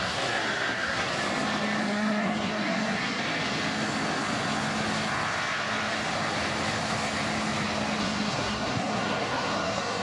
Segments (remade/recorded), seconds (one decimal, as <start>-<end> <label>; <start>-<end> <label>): 0.0-1.1 remade; 1.1-1.8 recorded; 1.8-3.2 remade; 3.2-8.0 recorded; 8.0-10.0 remade